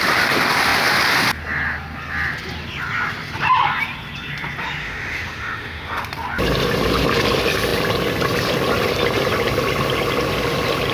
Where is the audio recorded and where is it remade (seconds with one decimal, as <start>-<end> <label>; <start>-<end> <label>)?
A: 0.0-4.8 recorded; 4.8-6.0 remade; 6.0-10.9 recorded

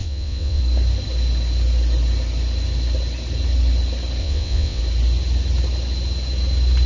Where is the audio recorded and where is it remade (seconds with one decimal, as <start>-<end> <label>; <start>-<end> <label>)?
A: 0.0-0.6 remade; 0.6-4.2 recorded; 4.2-4.8 remade; 4.8-6.9 recorded

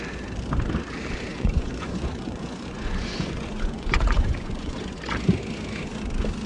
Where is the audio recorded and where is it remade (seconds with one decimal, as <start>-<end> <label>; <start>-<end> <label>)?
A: 0.0-1.3 recorded; 1.3-5.0 remade; 5.0-6.5 recorded